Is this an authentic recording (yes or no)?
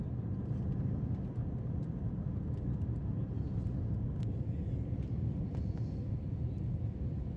yes